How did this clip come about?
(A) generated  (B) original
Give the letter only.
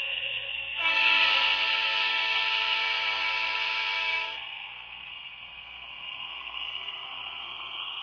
A